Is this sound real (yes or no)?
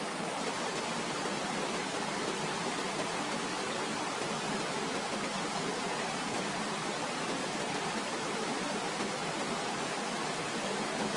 no